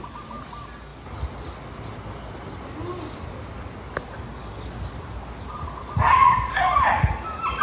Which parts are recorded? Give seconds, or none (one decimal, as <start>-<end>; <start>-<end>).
0.0-6.5; 7.1-7.6